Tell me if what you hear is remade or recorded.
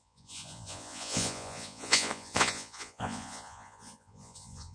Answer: remade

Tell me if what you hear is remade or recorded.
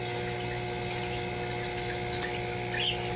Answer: recorded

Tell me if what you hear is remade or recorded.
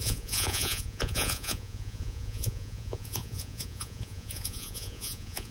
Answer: remade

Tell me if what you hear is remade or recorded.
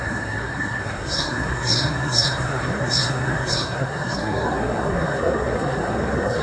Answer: remade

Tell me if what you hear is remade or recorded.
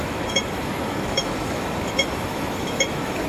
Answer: remade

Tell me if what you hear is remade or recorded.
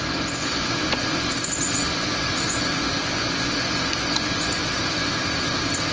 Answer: remade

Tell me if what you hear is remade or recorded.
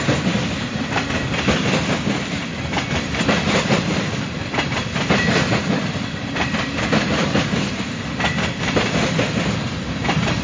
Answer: remade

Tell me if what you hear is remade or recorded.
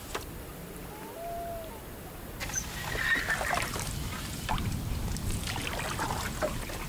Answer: recorded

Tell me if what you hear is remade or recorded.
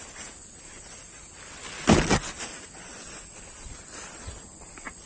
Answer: recorded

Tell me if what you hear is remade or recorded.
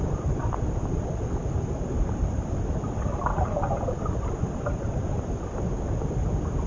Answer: recorded